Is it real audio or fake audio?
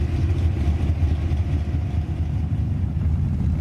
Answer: real